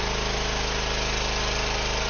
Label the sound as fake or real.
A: real